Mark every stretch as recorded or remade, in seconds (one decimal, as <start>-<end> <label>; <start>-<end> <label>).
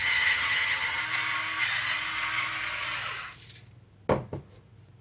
0.0-1.0 remade; 1.0-5.0 recorded